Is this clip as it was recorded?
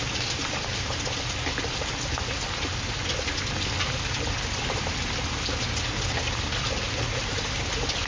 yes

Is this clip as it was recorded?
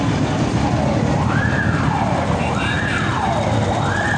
no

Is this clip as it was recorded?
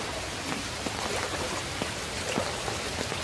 yes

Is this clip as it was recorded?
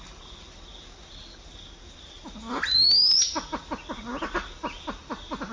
yes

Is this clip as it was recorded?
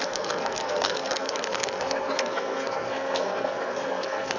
no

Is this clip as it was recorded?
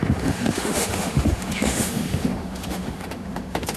no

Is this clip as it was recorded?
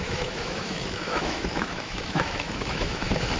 no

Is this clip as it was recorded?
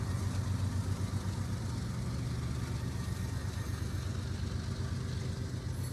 yes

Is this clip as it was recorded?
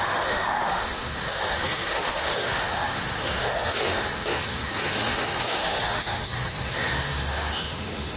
no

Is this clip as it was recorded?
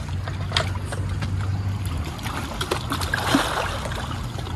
yes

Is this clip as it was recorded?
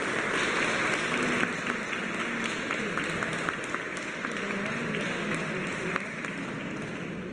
yes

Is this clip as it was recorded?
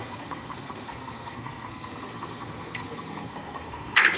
no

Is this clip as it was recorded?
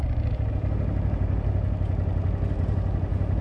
yes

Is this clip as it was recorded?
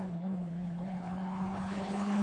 no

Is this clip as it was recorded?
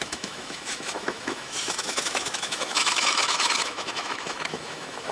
no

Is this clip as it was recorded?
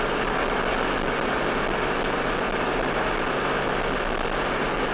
yes